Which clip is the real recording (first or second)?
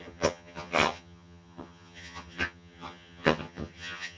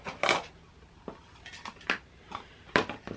second